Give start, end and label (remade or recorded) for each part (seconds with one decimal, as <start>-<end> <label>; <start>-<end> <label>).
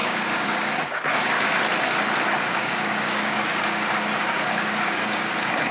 0.0-1.6 remade; 1.6-2.5 recorded; 2.5-3.9 remade; 3.9-4.3 recorded; 4.3-5.3 remade; 5.3-5.7 recorded